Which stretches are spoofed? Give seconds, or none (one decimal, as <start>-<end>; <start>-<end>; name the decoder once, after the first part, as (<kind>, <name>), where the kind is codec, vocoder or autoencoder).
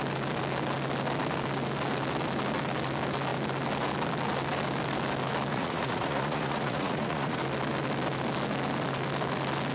5.5-7.4 (vocoder, Vocos)